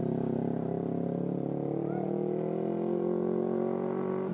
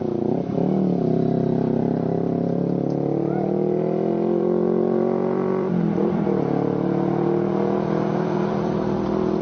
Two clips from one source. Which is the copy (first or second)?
second